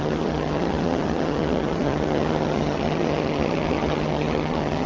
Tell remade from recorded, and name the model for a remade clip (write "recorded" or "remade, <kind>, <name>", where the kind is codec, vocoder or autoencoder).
remade, vocoder, HiFi-GAN